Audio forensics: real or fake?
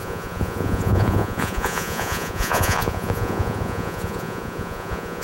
fake